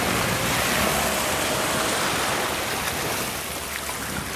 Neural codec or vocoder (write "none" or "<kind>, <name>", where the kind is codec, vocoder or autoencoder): none